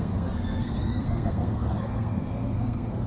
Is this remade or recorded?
remade